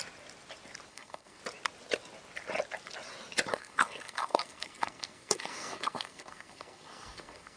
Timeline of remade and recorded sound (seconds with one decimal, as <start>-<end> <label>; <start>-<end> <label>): 0.0-0.9 recorded; 0.9-1.4 remade; 1.4-3.5 recorded; 3.5-7.6 remade